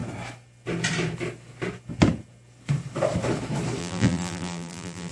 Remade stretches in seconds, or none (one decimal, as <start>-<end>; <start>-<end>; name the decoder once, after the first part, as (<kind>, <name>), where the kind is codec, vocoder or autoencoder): 3.8-5.1 (vocoder, BigVGAN v2)